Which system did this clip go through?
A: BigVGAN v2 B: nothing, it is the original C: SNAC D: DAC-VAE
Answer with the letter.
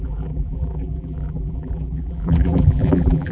A